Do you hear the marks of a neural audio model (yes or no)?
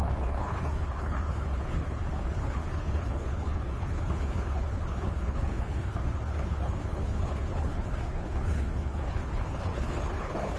yes